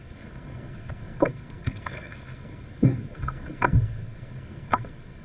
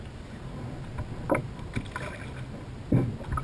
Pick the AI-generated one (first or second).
first